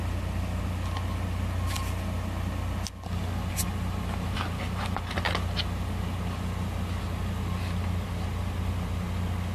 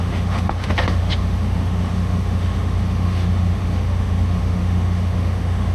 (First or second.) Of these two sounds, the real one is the first